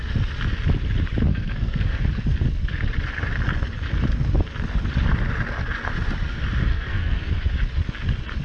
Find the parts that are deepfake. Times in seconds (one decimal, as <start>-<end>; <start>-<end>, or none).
1.3-2.0; 6.7-7.3